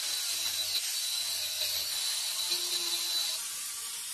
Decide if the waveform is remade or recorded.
recorded